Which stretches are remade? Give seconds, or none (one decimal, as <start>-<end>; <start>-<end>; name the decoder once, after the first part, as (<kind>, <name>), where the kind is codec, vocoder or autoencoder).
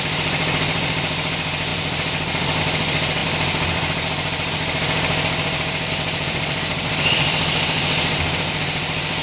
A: 0.0-9.2 (vocoder, BigVGAN v2)